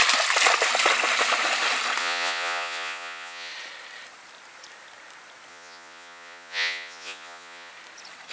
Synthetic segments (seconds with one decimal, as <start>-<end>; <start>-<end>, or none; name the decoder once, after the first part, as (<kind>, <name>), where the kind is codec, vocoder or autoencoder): 2.0-3.5 (vocoder, Vocos); 5.5-7.7